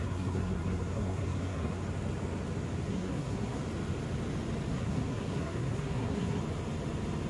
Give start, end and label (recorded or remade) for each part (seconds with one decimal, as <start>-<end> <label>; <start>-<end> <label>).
0.0-1.8 remade; 1.8-2.9 recorded; 2.9-3.6 remade; 3.6-4.7 recorded; 4.7-6.4 remade; 6.4-7.3 recorded